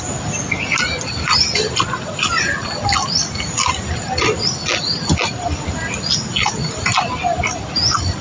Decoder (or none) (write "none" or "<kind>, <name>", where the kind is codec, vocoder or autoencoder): none